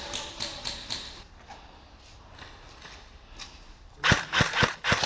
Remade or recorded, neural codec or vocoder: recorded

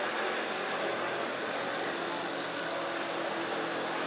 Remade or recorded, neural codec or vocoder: recorded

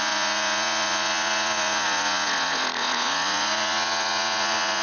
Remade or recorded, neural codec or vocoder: remade, vocoder, Vocos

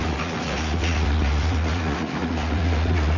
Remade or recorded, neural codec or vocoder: remade, vocoder, Vocos